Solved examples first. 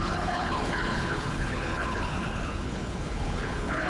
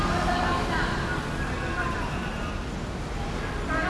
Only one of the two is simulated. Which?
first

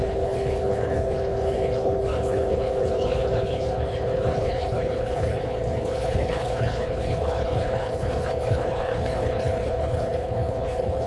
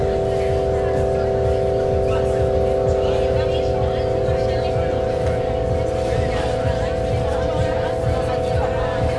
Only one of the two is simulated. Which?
first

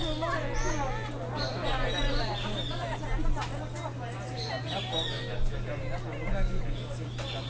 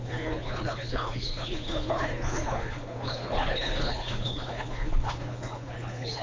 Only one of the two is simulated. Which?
second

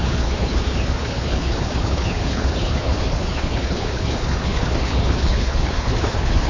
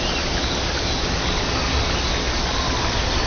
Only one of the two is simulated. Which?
first